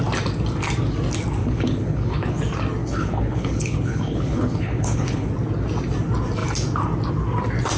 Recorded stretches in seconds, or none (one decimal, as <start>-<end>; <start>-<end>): 0.0-1.4; 2.4-2.8; 5.3-7.8